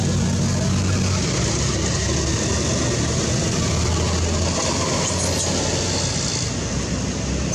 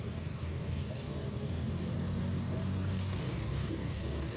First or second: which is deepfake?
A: second